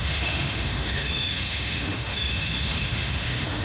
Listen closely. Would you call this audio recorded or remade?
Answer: remade